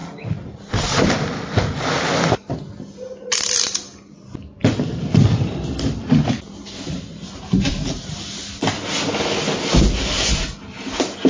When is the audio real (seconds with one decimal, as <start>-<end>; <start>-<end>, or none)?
0.0-11.3